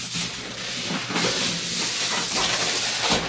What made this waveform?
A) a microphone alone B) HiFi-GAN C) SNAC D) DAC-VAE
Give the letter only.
A